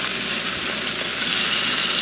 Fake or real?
real